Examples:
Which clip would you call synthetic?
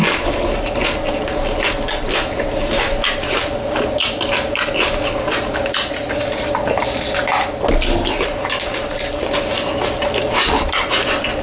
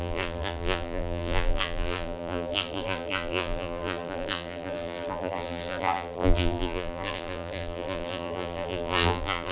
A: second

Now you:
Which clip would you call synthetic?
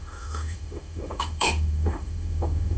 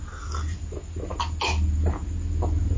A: first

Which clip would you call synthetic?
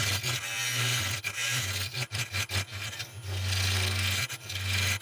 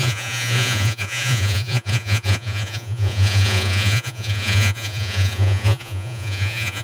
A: second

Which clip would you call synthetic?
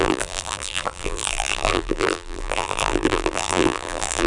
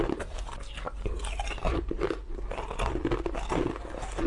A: first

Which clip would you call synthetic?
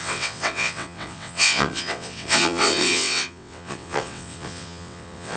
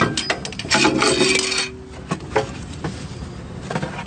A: first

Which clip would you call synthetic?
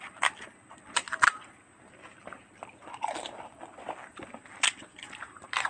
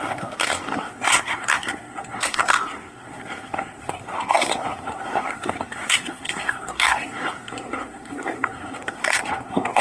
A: second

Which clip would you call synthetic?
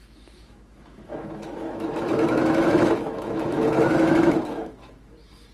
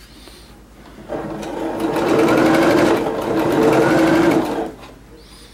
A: first